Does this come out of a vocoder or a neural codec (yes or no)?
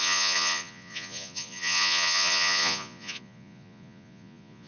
yes